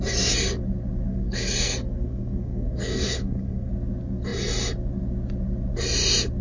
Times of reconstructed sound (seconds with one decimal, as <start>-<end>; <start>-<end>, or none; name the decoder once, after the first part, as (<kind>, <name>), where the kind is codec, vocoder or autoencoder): 1.1-3.7 (codec, SNAC)